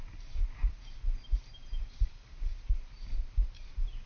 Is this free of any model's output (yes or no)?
no